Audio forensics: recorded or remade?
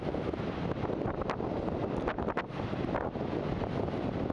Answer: recorded